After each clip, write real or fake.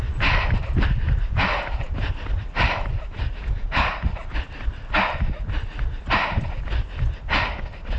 real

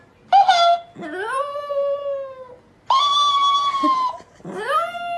real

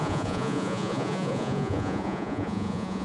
fake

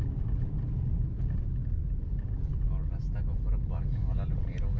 real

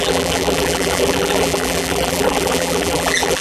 fake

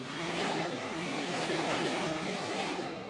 fake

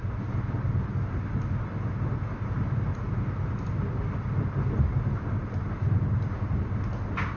real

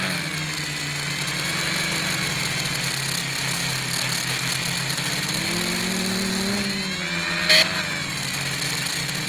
real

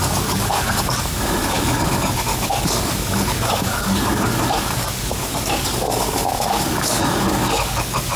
fake